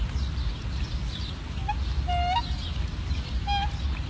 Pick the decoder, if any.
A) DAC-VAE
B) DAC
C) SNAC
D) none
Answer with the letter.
D